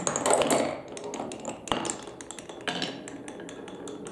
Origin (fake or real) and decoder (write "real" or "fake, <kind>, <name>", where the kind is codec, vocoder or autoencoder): real